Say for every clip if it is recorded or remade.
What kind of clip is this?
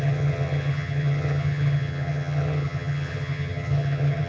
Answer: remade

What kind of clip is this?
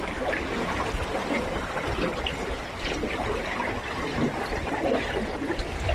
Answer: recorded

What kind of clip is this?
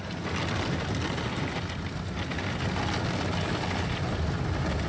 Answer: recorded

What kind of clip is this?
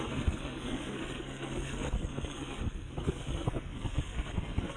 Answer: remade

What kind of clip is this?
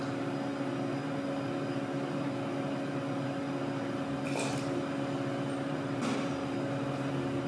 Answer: recorded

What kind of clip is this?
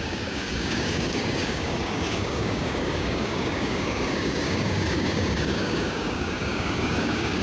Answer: remade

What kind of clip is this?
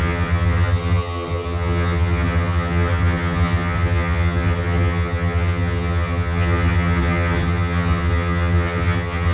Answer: remade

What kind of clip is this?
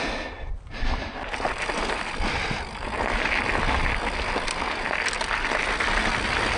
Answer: recorded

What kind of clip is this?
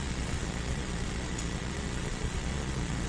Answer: remade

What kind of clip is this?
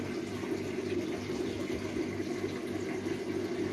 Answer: recorded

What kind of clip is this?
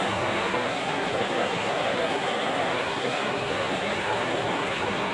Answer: remade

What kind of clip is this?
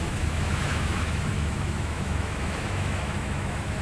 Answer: remade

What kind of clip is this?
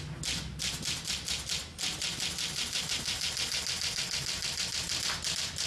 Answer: recorded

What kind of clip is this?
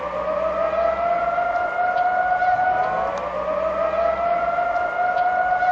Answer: recorded